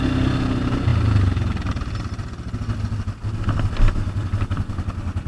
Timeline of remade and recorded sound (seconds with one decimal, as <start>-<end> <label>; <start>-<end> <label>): 0.0-5.3 recorded